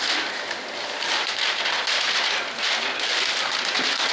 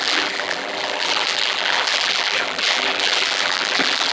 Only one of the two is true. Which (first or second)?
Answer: first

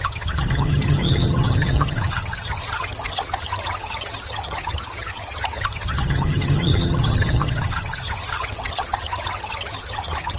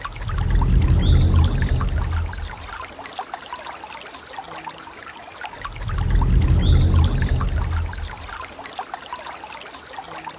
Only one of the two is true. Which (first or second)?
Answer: second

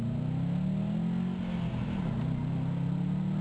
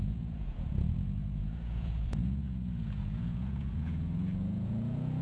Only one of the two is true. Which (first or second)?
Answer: first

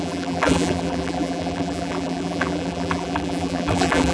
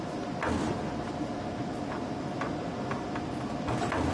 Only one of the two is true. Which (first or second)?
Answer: second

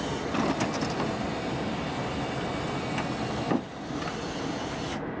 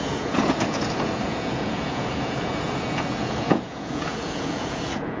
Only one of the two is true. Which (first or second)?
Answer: first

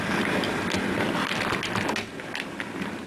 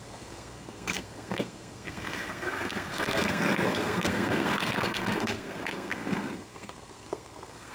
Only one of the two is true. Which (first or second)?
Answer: first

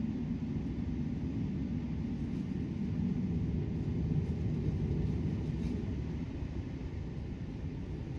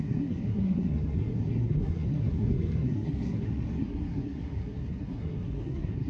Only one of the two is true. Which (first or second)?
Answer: first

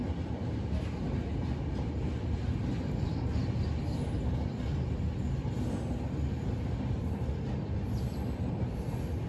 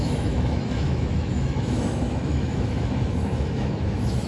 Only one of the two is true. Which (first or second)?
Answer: first